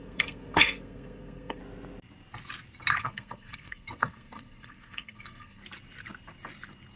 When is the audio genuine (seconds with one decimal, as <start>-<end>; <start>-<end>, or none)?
1.6-3.0; 5.6-7.0